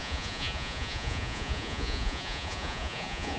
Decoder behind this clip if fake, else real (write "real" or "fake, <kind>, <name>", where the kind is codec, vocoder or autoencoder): fake, vocoder, Vocos